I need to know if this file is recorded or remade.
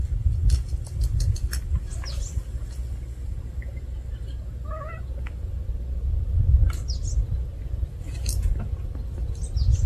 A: recorded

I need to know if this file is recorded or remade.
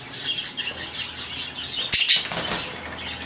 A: recorded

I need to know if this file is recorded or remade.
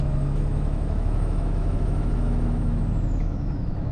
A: remade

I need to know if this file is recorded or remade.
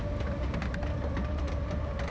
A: recorded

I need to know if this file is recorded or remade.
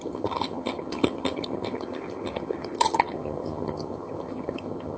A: remade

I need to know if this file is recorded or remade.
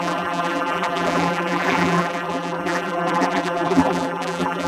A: remade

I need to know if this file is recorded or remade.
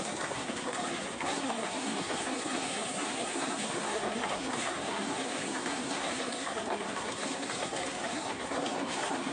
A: remade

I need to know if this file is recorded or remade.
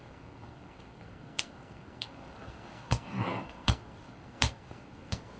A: remade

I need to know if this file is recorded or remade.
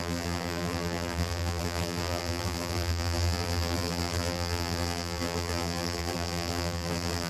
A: remade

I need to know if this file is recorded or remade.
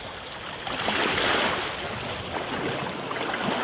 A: recorded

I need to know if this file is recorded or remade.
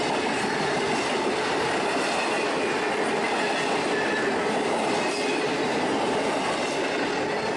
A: recorded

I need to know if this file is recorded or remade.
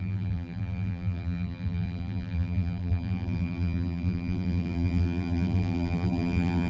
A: remade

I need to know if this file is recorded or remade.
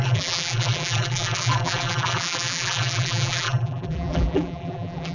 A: remade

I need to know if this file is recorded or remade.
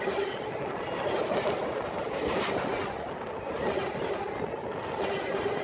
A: recorded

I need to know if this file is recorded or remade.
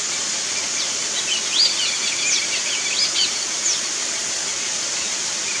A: recorded